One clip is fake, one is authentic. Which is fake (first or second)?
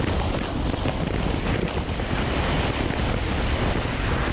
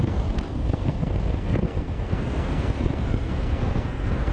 second